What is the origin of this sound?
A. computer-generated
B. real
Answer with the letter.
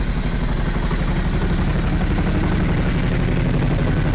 B